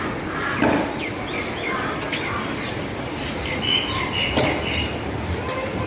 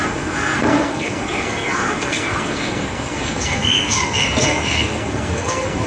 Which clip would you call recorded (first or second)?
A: first